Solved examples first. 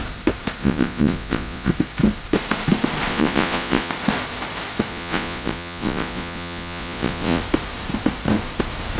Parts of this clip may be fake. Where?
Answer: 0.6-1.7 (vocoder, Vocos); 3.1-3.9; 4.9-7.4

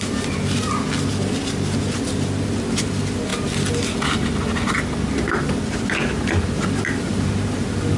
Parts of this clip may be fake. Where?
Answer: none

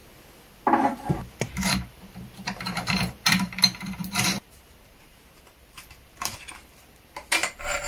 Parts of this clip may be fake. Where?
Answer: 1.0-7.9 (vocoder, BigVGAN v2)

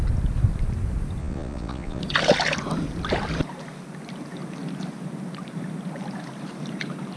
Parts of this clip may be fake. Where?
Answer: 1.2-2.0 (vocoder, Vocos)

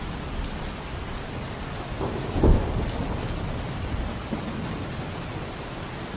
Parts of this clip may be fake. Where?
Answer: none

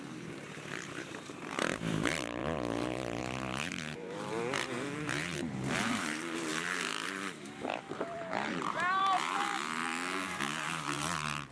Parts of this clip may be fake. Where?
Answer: 0.0-2.4 (vocoder, BigVGAN v2); 3.2-9.8; 10.4-11.5

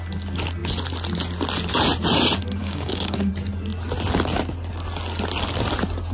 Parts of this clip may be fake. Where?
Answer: 2.6-3.3 (codec, DAC)